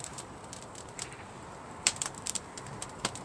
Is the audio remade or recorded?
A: remade